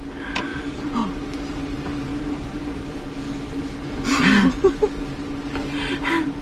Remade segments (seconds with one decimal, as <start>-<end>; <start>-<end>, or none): 2.1-2.8

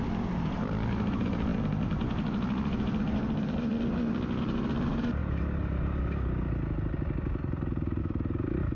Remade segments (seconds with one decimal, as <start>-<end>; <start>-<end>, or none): 0.0-1.5; 4.4-5.2; 8.0-8.8

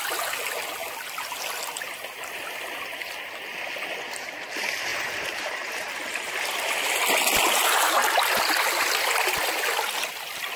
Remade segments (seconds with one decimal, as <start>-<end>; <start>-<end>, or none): 4.9-5.9

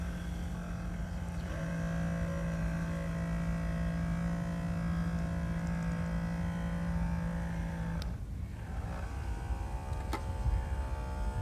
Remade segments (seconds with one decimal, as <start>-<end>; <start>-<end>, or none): 1.0-1.7

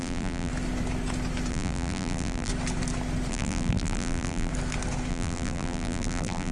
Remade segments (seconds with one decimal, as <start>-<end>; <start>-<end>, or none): 0.0-0.5; 1.5-2.5; 3.3-4.5; 5.1-6.5

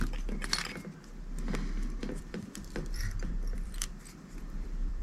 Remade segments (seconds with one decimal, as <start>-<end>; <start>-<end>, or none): 2.0-5.0

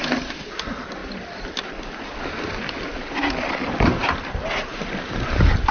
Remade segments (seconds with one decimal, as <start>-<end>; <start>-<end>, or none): 1.0-2.0

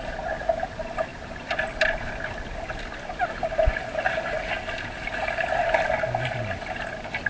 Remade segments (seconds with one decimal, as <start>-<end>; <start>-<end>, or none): none